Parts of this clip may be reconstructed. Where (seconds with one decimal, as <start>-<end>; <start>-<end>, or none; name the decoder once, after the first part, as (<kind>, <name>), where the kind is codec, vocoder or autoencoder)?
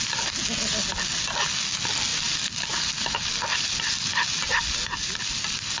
none